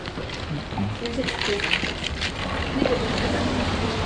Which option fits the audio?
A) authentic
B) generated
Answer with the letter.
A